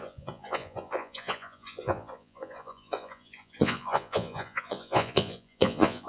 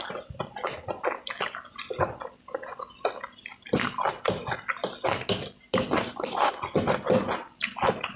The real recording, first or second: second